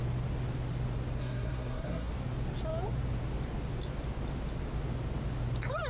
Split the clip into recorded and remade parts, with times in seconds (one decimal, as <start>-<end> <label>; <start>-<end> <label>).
0.0-1.2 recorded; 1.2-2.1 remade; 2.1-5.9 recorded